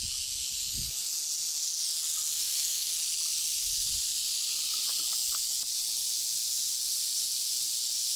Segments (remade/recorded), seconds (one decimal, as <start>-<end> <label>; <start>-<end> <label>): 0.0-2.4 recorded; 2.4-2.9 remade; 2.9-8.2 recorded